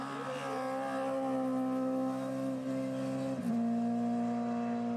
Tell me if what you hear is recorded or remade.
recorded